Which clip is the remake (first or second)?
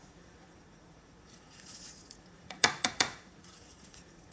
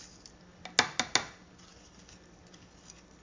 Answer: first